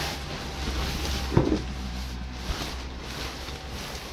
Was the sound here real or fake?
real